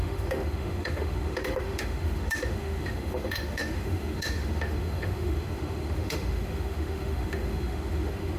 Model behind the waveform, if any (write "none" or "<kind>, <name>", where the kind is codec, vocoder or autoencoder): autoencoder, DAC-VAE